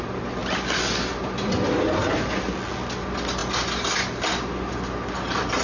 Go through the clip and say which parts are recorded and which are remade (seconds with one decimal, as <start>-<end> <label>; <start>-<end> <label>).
0.0-5.6 recorded